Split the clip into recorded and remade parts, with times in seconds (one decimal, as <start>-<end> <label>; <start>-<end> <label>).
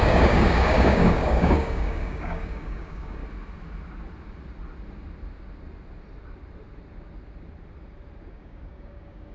0.0-3.2 remade; 3.2-8.3 recorded; 8.3-9.3 remade